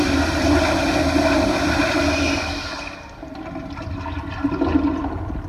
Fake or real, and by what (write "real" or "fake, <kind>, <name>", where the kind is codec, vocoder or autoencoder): real